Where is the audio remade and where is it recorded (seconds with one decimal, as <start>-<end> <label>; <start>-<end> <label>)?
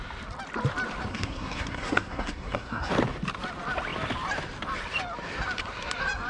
0.0-1.1 recorded; 1.1-2.9 remade; 2.9-6.3 recorded